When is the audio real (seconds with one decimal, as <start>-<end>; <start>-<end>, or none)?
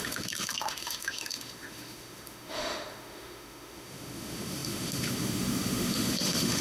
none